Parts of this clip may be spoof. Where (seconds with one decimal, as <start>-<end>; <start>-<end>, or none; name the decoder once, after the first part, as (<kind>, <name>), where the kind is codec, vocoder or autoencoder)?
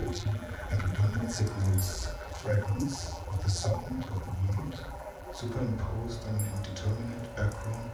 0.0-1.4 (vocoder, BigVGAN v2); 1.9-5.4